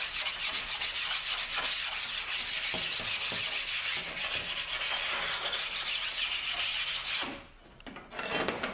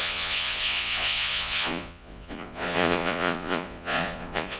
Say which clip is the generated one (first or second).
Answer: second